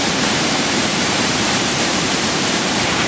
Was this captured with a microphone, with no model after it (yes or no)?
no